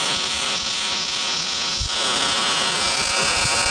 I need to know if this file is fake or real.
real